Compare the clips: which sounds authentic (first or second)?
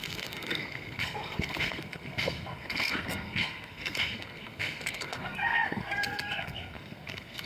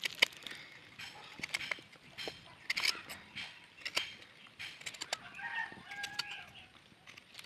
second